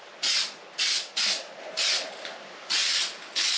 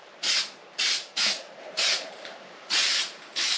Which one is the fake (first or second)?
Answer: second